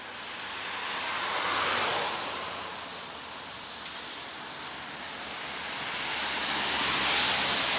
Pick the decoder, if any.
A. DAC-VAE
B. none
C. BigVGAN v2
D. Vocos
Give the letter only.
B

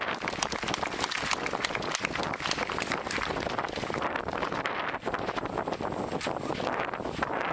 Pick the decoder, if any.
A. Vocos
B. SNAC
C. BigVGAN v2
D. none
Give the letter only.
D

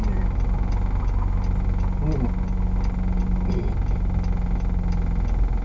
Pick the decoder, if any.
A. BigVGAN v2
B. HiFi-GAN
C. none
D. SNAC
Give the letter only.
C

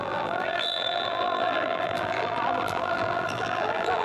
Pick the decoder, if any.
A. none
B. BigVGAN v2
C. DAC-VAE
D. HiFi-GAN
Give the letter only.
B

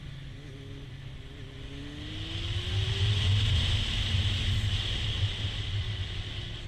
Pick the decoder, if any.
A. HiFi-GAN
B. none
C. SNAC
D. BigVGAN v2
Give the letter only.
B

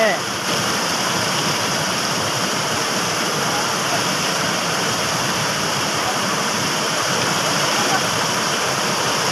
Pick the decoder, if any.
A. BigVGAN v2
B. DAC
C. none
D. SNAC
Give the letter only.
A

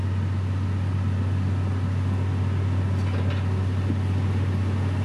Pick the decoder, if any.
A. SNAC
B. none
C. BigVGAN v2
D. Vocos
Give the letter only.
B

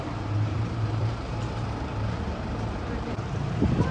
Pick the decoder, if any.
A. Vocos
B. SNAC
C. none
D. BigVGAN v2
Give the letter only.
D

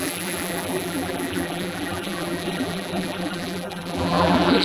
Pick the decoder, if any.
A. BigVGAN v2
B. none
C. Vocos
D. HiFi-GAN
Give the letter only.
A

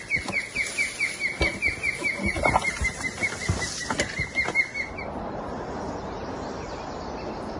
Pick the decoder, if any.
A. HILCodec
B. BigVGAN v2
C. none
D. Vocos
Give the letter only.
C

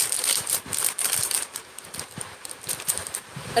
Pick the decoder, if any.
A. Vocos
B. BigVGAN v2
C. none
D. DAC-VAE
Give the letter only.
B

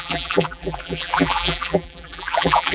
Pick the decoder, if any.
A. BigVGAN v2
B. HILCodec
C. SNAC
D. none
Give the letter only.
A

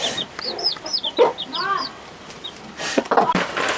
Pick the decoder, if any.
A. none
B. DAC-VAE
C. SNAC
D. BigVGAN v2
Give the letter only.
D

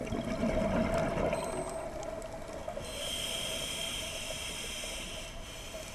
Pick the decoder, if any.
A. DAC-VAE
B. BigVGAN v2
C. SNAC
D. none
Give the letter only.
D